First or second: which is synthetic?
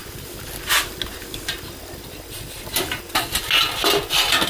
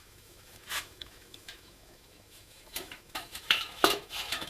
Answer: second